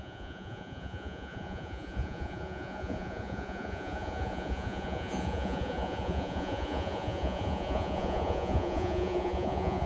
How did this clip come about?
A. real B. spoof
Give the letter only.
B